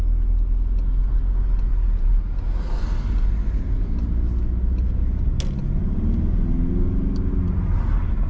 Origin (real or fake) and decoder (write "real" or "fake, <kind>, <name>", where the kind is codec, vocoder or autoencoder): real